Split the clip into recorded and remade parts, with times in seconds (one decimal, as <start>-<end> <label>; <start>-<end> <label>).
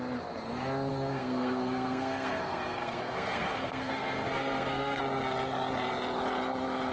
0.0-0.9 recorded; 0.9-5.0 remade; 5.0-6.9 recorded